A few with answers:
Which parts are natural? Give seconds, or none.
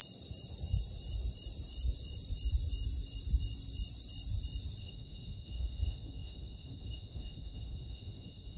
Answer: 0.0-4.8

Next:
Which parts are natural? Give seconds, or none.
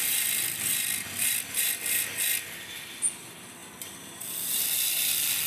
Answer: 0.0-5.5